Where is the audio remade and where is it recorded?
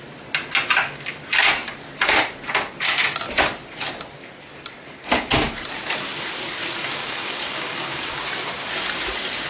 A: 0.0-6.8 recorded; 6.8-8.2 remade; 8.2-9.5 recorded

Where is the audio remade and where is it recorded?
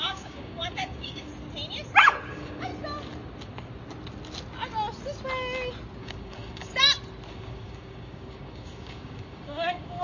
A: 0.0-1.3 remade; 1.3-2.3 recorded; 2.3-2.7 remade; 2.7-6.0 recorded; 6.0-6.7 remade; 6.7-7.3 recorded; 7.3-10.0 remade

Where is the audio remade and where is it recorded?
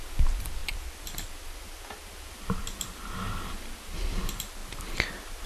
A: 0.0-5.5 recorded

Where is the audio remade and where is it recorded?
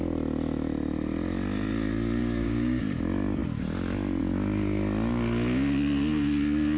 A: 0.0-2.2 recorded; 2.2-2.8 remade; 2.8-6.8 recorded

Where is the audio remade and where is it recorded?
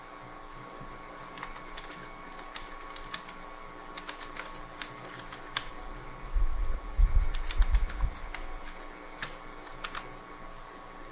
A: 0.0-11.1 recorded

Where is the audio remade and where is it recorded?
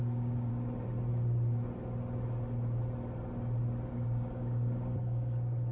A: 0.0-0.5 remade; 0.5-3.9 recorded; 3.9-5.7 remade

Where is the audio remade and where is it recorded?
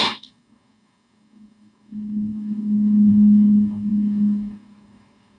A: 0.0-5.4 remade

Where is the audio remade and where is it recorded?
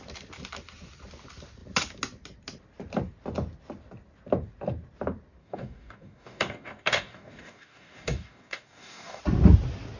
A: 0.0-5.4 recorded; 5.4-9.2 remade; 9.2-10.0 recorded